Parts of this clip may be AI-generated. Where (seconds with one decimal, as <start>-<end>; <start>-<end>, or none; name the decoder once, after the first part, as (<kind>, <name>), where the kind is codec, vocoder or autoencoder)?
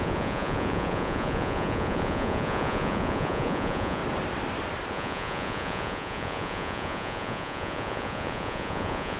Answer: 0.0-4.0 (vocoder, Vocos); 4.9-9.2